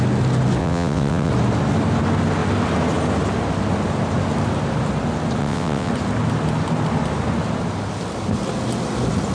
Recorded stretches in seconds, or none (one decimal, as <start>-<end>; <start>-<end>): 0.0-0.6; 1.3-5.4; 5.9-9.3